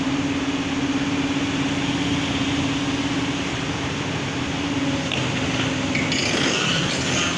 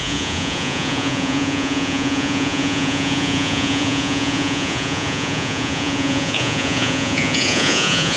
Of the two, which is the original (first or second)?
first